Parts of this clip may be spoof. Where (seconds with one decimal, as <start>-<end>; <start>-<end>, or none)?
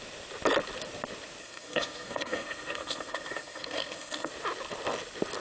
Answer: 1.4-4.3